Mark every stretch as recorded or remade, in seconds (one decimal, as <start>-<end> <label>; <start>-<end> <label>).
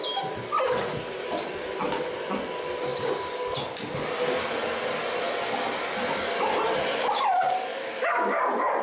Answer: 0.0-7.7 recorded; 7.7-8.4 remade; 8.4-8.8 recorded